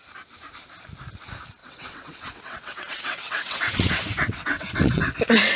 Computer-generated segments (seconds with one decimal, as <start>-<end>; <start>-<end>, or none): 1.6-5.0